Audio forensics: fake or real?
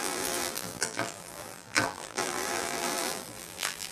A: fake